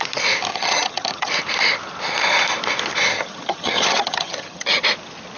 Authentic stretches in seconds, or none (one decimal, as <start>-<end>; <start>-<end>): 0.0-0.5; 1.3-3.1; 4.8-5.4